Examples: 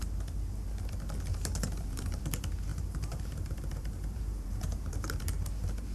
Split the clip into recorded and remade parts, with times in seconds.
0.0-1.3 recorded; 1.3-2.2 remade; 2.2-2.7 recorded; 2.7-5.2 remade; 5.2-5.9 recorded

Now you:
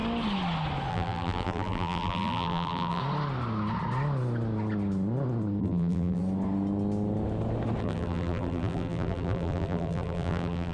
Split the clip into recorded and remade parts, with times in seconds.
0.0-0.9 recorded; 0.9-3.0 remade; 3.0-5.6 recorded; 5.6-6.2 remade; 6.2-7.8 recorded; 7.8-10.7 remade

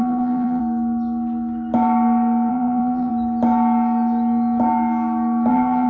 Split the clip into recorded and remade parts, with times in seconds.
0.0-0.6 remade; 0.6-2.5 recorded; 2.5-3.1 remade; 3.1-5.5 recorded; 5.5-5.9 remade